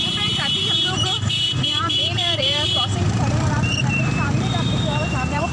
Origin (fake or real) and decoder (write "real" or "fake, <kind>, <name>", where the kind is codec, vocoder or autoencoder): fake, vocoder, BigVGAN v2